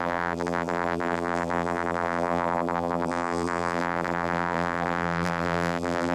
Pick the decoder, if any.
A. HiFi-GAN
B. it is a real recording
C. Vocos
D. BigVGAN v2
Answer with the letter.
D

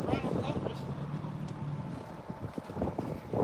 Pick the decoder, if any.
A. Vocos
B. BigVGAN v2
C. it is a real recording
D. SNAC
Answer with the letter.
C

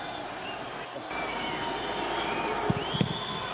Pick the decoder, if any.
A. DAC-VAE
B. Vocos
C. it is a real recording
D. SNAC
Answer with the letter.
C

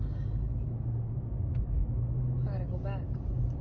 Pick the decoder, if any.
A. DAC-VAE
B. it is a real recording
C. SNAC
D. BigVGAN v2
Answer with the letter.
B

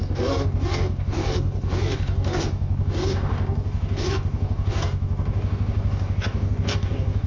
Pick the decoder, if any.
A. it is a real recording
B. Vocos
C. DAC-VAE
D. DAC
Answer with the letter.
D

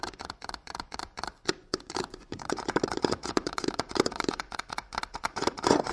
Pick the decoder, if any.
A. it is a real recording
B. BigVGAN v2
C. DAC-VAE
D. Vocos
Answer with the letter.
D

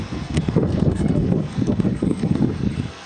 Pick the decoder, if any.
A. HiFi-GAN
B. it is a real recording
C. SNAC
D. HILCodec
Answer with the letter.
C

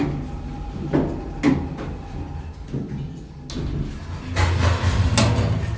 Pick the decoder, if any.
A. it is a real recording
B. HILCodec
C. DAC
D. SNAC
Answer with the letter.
A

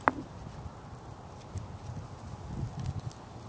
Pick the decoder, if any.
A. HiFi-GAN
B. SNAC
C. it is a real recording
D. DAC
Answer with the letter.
C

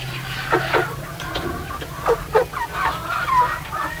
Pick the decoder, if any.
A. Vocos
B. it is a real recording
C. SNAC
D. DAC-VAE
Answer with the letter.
B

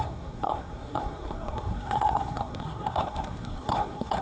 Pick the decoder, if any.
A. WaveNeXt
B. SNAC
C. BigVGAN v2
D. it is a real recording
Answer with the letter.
B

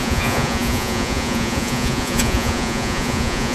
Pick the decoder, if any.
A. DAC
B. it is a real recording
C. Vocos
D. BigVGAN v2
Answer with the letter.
C